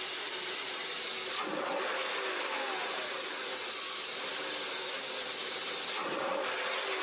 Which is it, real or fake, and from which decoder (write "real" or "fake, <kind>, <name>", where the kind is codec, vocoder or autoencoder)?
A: real